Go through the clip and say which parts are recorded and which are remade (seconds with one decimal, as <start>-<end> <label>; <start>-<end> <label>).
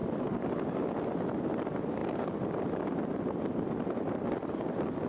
0.0-5.1 recorded